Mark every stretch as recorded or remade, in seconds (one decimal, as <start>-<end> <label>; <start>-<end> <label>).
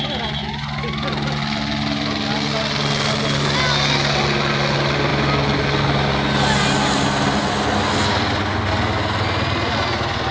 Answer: 0.0-10.3 recorded